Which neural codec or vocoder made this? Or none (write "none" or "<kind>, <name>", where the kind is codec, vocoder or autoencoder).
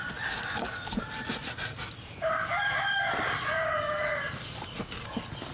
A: none